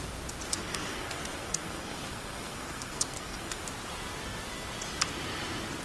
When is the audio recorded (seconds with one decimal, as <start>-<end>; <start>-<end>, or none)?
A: 0.0-0.6; 3.6-5.8